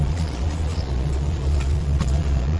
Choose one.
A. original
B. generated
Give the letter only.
B